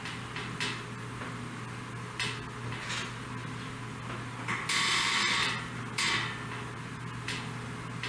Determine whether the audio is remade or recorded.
recorded